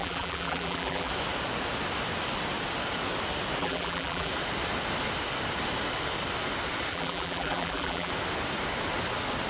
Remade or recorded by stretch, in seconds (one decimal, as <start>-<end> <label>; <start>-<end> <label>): 0.0-1.1 remade; 1.1-3.6 recorded; 3.6-4.3 remade; 4.3-6.9 recorded; 6.9-8.1 remade; 8.1-9.5 recorded